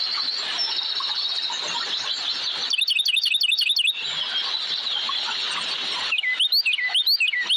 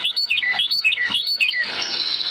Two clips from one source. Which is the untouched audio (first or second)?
first